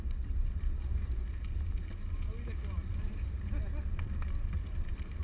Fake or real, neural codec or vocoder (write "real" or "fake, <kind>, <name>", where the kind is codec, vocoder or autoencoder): real